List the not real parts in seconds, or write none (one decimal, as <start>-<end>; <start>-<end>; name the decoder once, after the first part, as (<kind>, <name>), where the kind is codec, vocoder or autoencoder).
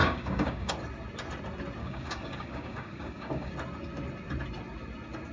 0.0-0.7 (codec, DAC); 1.8-3.5